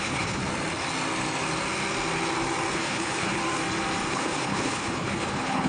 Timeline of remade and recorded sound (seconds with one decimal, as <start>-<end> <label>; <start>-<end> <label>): 0.0-0.4 remade; 0.4-2.7 recorded; 2.7-3.4 remade; 3.4-4.1 recorded; 4.1-5.7 remade